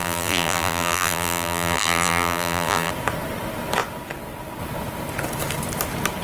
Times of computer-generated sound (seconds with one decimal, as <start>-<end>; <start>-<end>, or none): 0.0-2.9